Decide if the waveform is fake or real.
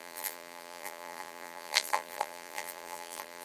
fake